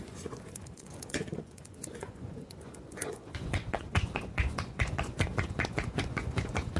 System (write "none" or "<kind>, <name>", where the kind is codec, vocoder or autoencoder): vocoder, Vocos